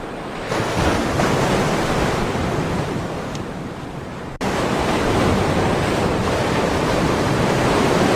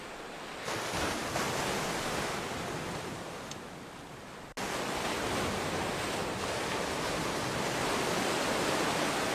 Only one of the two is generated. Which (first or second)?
first